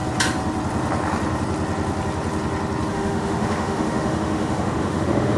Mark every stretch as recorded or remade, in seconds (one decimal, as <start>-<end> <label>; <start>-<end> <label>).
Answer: 0.0-2.9 recorded; 2.9-5.4 remade